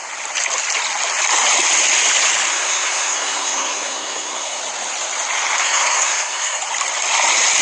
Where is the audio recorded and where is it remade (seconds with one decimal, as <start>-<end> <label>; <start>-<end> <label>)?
0.0-2.5 recorded; 2.5-4.6 remade; 4.6-5.6 recorded; 5.6-6.6 remade; 6.6-7.6 recorded